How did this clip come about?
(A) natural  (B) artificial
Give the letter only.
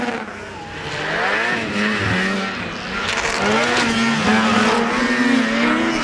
A